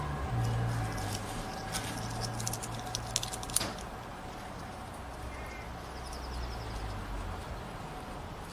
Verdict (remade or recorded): recorded